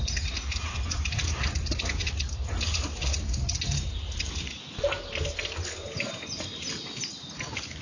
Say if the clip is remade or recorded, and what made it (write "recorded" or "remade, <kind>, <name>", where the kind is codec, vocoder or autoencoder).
recorded